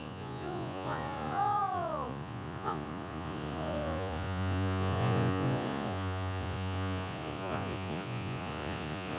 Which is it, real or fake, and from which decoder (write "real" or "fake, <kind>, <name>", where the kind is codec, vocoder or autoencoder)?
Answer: fake, vocoder, Vocos